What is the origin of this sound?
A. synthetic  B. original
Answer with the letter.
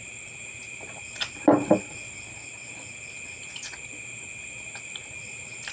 B